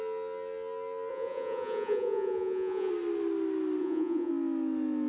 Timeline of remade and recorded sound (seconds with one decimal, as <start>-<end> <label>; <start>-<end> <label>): 0.0-1.1 recorded; 1.1-2.9 remade; 2.9-3.8 recorded; 3.8-4.3 remade; 4.3-5.1 recorded